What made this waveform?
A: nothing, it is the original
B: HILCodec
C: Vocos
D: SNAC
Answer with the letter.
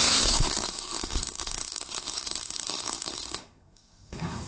D